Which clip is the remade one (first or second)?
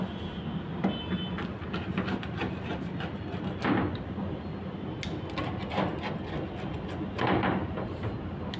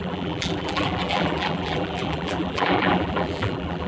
second